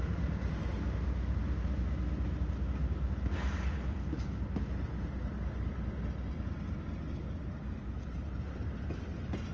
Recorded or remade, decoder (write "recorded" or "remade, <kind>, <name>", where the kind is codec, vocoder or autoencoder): recorded